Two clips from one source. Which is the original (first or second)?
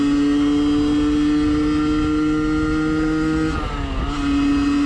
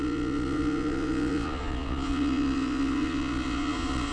first